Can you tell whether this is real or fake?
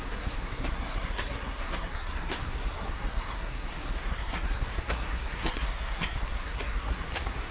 fake